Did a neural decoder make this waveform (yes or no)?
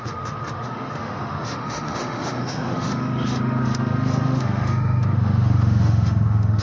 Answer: yes